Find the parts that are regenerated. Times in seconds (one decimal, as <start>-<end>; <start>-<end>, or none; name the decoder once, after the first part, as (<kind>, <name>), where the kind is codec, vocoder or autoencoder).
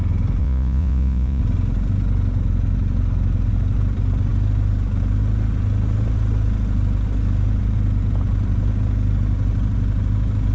0.4-1.4 (vocoder, Vocos)